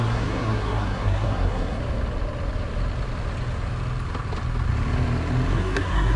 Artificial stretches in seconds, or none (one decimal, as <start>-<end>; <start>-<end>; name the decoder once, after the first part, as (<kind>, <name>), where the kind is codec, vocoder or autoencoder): 0.0-1.8 (codec, SNAC); 5.5-6.2